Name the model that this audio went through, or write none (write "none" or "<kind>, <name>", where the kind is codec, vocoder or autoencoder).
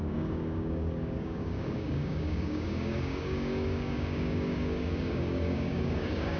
codec, DAC